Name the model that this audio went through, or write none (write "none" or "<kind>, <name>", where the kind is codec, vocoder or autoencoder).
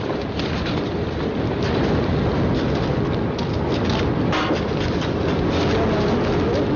none